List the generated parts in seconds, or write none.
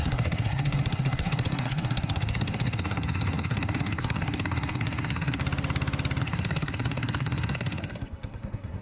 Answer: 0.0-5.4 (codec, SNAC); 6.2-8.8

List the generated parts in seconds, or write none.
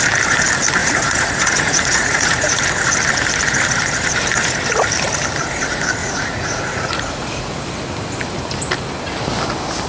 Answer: 0.8-2.6 (vocoder, Vocos); 6.0-7.7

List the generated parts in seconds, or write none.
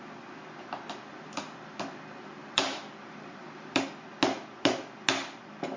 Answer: 2.4-3.8 (vocoder, BigVGAN v2)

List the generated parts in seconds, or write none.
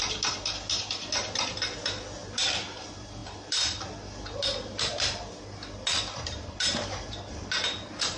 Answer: none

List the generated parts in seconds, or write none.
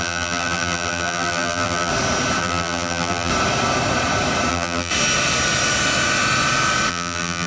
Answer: 0.0-1.9 (vocoder, BigVGAN v2); 2.4-3.3; 4.5-4.9; 6.9-7.5